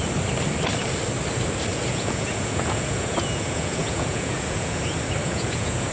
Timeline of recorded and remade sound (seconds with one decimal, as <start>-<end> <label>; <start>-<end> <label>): 0.0-1.7 recorded; 1.7-4.8 remade; 4.8-5.2 recorded; 5.2-5.9 remade